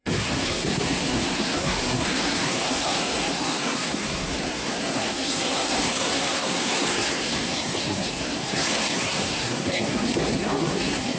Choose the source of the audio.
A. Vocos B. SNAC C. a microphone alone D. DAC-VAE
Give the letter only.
B